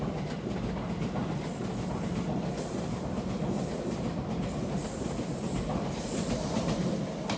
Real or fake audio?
real